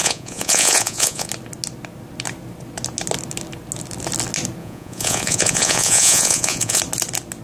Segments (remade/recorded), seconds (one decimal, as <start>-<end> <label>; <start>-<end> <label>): 0.0-1.3 remade; 1.3-4.6 recorded; 4.6-6.8 remade; 6.8-7.4 recorded